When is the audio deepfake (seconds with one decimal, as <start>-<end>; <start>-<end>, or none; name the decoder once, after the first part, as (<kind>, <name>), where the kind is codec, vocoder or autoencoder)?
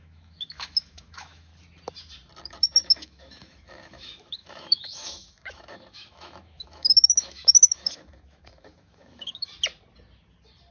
0.0-1.5 (autoencoder, DAC-VAE); 2.4-9.5